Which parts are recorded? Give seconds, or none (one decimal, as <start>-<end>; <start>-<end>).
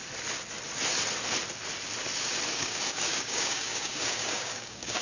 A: 0.0-2.5